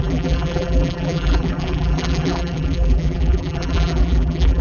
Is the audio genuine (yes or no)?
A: no